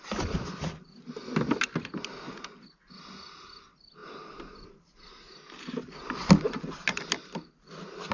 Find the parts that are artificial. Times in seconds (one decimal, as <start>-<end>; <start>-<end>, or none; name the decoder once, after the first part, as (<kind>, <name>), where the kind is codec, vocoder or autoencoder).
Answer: none